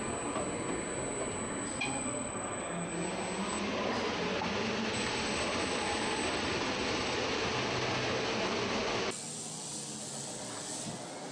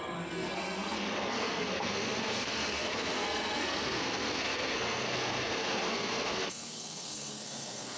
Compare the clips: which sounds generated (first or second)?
second